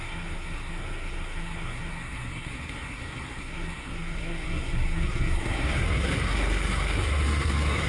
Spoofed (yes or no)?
yes